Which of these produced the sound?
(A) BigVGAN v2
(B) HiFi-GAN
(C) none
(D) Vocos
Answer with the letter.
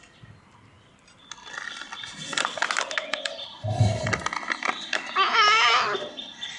A